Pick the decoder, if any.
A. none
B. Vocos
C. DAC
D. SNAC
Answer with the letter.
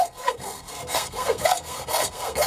D